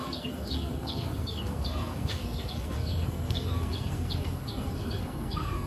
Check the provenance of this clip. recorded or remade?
remade